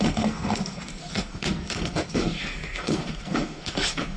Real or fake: fake